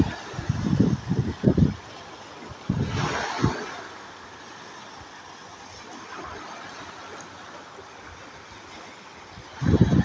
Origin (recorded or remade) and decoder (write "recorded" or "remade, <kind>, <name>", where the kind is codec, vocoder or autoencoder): recorded